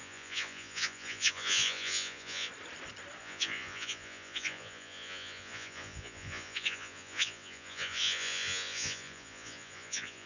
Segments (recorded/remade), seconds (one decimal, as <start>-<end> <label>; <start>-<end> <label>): 0.0-2.5 remade; 2.5-3.2 recorded; 3.2-10.3 remade